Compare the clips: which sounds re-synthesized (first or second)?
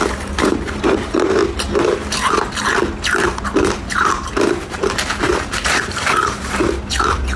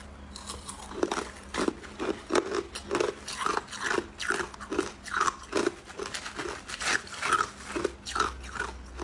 first